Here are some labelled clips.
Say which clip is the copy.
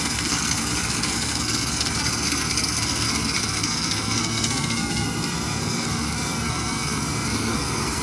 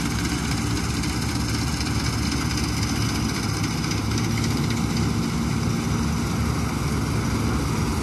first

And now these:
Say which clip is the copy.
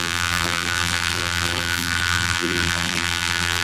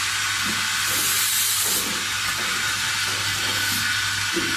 first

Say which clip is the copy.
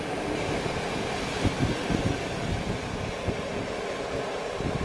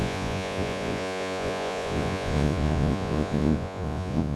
second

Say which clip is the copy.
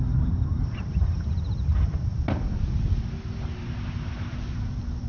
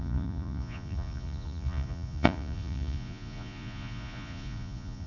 second